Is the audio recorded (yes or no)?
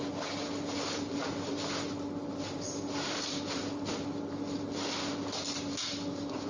yes